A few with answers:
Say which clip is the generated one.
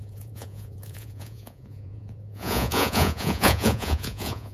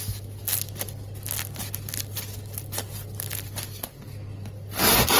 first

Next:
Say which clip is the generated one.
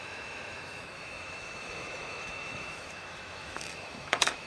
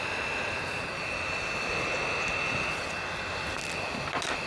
first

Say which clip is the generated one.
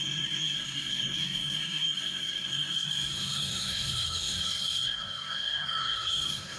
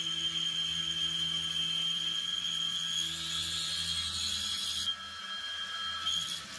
first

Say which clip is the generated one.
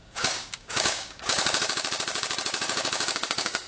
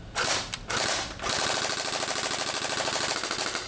first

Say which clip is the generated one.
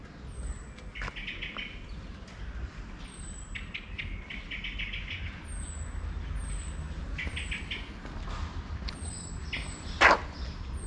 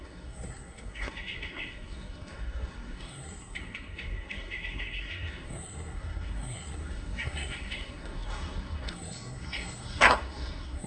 second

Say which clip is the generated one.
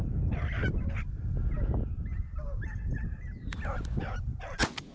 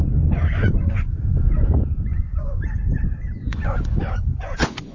second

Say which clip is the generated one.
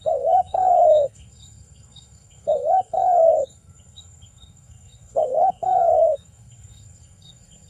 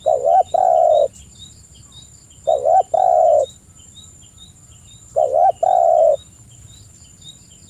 first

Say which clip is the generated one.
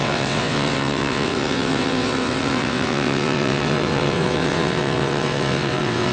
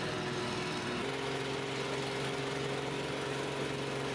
first